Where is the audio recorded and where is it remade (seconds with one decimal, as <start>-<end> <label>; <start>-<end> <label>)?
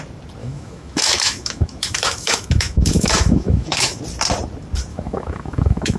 0.0-0.4 recorded; 0.4-4.0 remade; 4.0-4.9 recorded; 4.9-6.0 remade